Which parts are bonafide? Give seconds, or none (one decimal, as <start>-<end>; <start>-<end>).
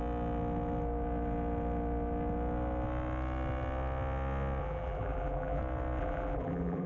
0.0-4.6; 5.6-6.0